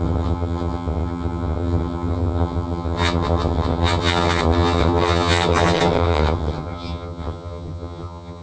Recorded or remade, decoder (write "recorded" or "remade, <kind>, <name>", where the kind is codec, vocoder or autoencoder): remade, vocoder, HiFi-GAN